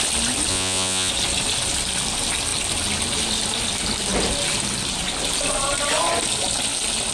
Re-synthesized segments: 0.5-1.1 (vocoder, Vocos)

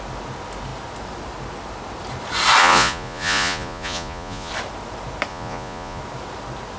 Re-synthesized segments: 2.6-4.5 (vocoder, Vocos); 5.3-6.0

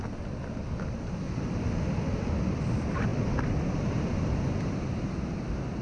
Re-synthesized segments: none

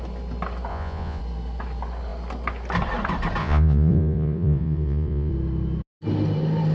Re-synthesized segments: 0.7-1.2 (vocoder, Vocos); 3.4-5.3